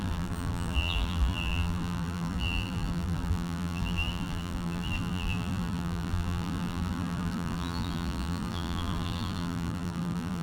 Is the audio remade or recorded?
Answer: remade